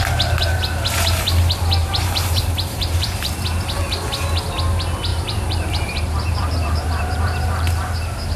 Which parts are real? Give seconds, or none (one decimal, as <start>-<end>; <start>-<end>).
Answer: 0.0-1.8; 3.3-5.1; 7.7-8.4